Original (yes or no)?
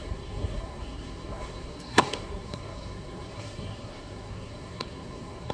no